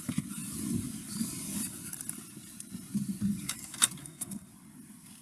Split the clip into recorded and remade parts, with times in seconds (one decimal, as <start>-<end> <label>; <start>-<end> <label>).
0.0-4.0 recorded; 4.0-4.5 remade; 4.5-5.2 recorded